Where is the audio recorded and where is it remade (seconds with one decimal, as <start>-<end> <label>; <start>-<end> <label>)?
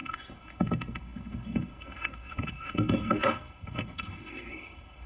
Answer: 0.0-5.1 remade